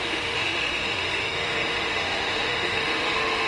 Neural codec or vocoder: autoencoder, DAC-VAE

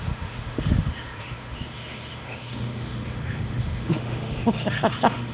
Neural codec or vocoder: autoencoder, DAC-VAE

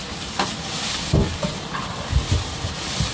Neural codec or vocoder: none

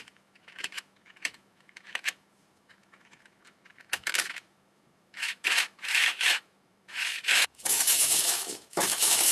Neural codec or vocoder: autoencoder, DAC-VAE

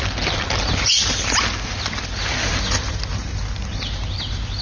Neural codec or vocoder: none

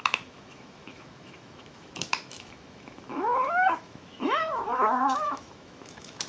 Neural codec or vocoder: autoencoder, DAC-VAE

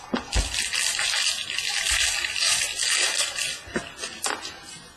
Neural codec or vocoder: none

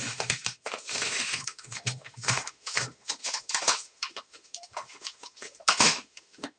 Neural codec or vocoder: autoencoder, DAC-VAE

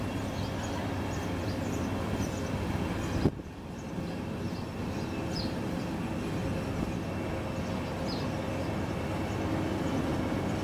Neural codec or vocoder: none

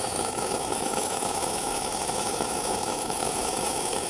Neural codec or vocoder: autoencoder, DAC-VAE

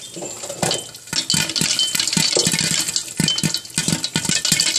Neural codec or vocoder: none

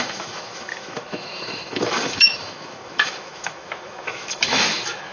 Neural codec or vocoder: autoencoder, DAC-VAE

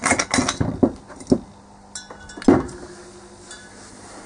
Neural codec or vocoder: none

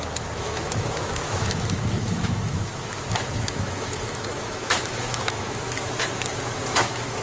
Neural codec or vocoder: autoencoder, DAC-VAE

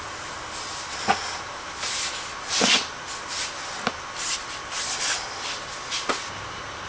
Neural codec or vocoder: none